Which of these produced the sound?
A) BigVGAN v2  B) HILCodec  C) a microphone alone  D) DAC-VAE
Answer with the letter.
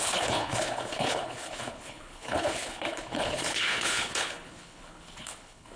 B